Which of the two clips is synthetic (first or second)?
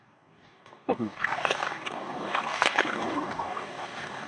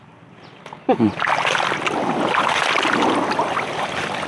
first